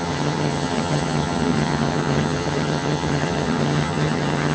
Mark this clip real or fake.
fake